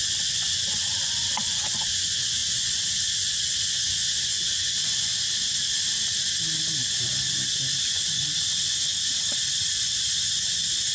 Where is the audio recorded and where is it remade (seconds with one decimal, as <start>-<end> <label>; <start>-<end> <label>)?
0.0-5.1 remade; 5.1-7.8 recorded; 7.8-8.9 remade; 8.9-9.7 recorded; 9.7-10.9 remade